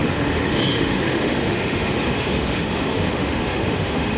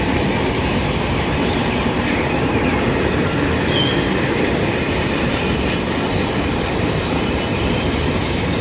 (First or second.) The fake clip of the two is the first